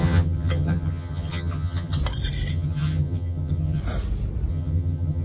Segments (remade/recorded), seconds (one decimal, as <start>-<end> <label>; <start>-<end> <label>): 0.0-2.0 remade; 2.0-2.5 recorded; 2.5-3.8 remade; 3.8-4.5 recorded; 4.5-5.2 remade